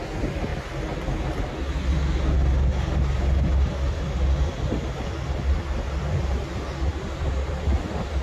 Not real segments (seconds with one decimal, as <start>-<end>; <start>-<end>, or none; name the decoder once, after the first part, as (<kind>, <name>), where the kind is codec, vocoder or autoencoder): 6.9-8.2 (vocoder, BigVGAN v2)